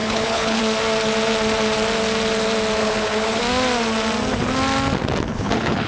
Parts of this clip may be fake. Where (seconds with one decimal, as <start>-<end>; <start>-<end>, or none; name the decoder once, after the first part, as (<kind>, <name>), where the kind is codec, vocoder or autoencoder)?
0.0-0.6 (codec, HILCodec); 2.8-3.4; 5.3-5.9